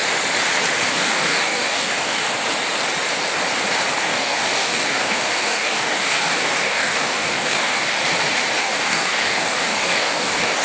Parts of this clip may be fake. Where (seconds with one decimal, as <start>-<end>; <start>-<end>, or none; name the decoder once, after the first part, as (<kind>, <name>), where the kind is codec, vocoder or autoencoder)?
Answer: 0.9-2.2 (codec, DAC); 4.0-8.0; 8.6-10.6

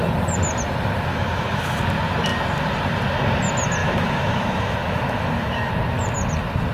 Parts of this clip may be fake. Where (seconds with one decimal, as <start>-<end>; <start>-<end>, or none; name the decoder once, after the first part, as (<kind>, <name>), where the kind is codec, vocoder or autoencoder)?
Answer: 1.1-1.8 (autoencoder, DAC-VAE); 3.8-5.7